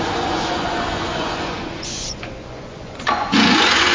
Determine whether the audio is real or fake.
fake